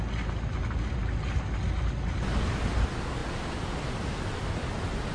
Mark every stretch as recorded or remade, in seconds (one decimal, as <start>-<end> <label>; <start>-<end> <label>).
0.0-5.1 recorded